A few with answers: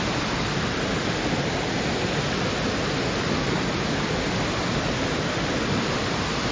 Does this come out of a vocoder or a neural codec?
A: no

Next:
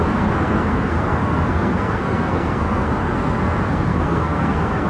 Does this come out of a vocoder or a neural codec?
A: yes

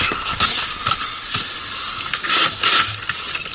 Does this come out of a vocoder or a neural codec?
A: no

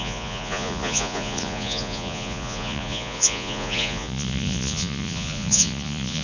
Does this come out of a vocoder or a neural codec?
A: yes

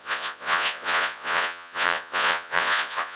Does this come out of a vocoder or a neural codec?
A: yes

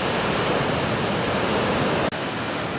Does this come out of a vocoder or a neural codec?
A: no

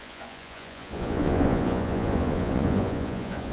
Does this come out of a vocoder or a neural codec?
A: yes